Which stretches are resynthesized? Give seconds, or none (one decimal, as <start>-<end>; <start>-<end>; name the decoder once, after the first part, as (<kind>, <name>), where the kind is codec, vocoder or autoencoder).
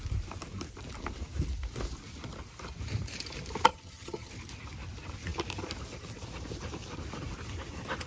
3.7-4.3 (vocoder, HiFi-GAN)